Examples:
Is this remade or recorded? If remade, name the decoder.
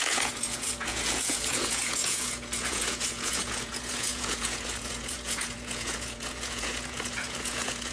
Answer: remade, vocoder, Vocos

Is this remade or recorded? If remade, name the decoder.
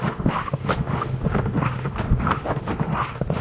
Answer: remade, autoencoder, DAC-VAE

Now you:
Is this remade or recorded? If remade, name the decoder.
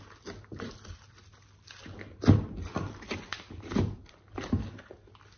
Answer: recorded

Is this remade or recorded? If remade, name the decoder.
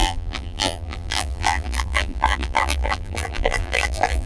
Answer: remade, vocoder, BigVGAN v2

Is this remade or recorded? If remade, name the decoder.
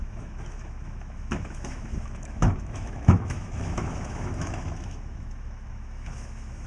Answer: remade, autoencoder, DAC-VAE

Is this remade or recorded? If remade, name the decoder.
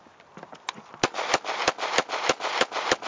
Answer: recorded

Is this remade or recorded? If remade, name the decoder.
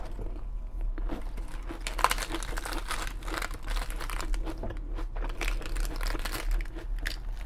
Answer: recorded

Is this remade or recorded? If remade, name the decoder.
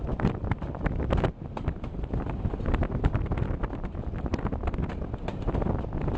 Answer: recorded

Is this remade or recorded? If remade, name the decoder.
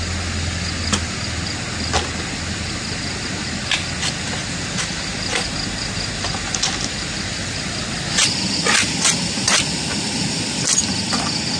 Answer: recorded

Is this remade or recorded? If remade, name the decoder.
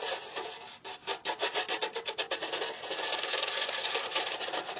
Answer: recorded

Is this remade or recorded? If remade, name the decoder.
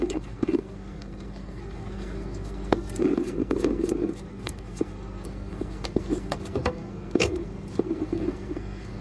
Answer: remade, codec, SNAC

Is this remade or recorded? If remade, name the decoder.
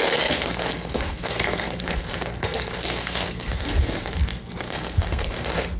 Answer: remade, codec, SNAC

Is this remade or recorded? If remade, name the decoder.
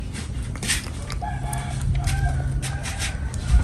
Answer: recorded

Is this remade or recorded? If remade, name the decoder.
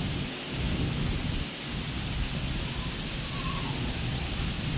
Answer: recorded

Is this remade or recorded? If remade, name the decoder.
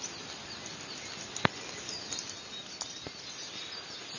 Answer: recorded